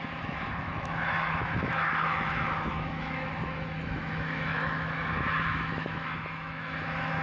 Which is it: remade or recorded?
remade